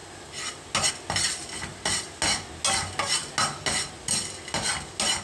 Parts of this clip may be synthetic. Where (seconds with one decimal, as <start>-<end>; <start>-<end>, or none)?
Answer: none